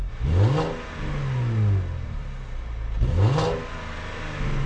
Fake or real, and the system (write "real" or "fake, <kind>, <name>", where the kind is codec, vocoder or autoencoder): real